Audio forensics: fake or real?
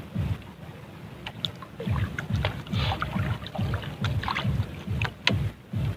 real